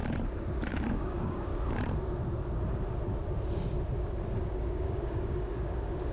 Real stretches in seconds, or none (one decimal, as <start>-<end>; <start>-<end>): 0.0-0.7; 1.5-4.4